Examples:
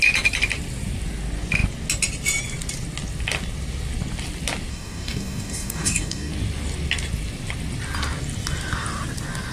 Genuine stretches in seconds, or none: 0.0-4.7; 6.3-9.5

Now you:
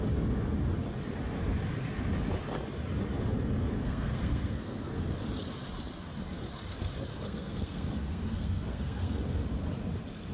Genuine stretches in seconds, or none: 0.0-3.8; 5.0-7.1; 9.2-10.3

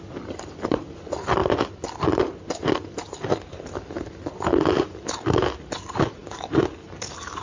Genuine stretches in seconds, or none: 0.0-7.4

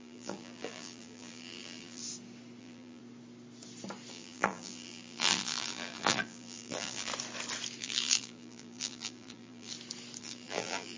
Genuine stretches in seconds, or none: 2.0-2.6; 3.0-4.1; 7.1-7.8; 9.7-10.2